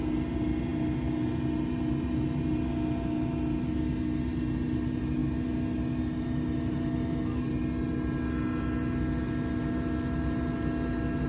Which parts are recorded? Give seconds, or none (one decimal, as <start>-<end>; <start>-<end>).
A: 0.0-11.3